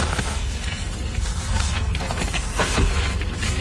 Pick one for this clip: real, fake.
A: fake